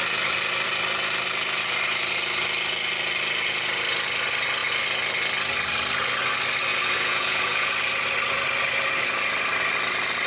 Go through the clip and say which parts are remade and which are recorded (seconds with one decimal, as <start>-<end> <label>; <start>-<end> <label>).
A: 0.0-6.7 recorded; 6.7-7.7 remade; 7.7-10.3 recorded